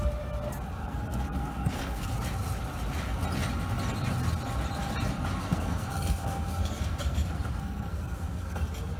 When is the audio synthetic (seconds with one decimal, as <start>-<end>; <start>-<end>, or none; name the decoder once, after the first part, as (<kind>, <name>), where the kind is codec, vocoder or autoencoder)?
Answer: 0.8-2.1 (codec, SNAC); 5.4-8.6